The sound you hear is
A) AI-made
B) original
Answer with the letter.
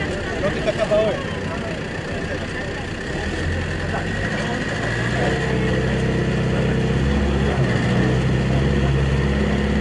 B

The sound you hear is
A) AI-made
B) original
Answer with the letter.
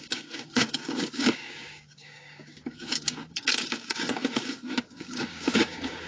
A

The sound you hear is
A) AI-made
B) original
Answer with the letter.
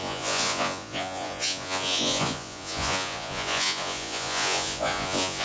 A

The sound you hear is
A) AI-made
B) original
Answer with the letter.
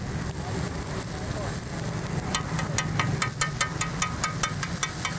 B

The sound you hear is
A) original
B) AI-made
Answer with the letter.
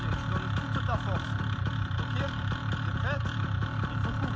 A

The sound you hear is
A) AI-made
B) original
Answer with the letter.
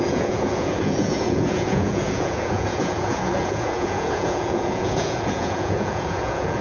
A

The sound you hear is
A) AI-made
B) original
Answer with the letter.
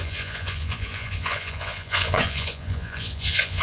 A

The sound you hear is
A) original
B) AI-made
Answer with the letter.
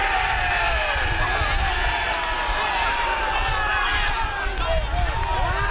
A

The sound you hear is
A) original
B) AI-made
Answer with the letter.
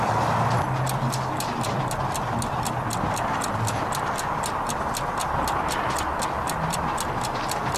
A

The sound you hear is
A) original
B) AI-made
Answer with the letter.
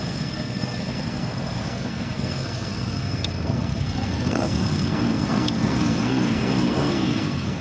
B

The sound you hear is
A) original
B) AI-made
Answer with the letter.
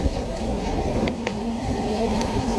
B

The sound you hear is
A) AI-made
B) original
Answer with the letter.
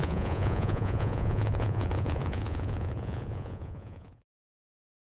A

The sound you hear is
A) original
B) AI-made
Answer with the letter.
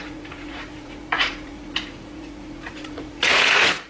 B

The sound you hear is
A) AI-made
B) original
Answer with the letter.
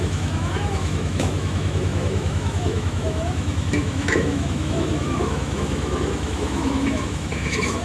A